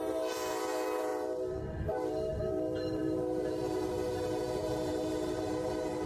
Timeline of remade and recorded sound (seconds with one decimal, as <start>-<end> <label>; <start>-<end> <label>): 0.0-6.1 remade